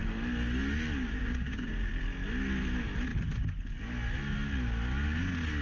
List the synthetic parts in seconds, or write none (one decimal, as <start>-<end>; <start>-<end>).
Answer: 1.2-1.9

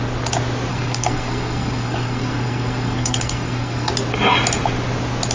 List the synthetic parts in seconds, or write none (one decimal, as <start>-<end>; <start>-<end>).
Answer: 0.7-3.9

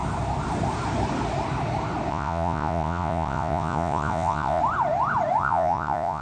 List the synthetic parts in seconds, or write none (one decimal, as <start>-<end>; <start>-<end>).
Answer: 2.1-4.6; 5.4-6.2

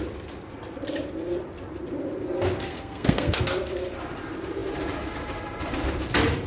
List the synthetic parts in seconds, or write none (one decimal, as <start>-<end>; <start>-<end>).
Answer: 2.7-3.4

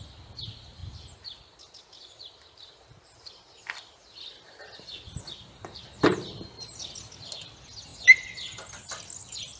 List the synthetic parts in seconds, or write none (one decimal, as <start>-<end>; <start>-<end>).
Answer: none